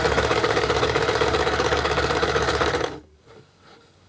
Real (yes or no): no